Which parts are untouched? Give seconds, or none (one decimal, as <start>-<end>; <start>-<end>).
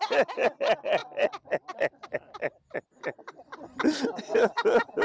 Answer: 0.0-5.0